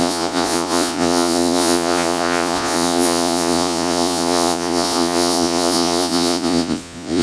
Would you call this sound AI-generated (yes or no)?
yes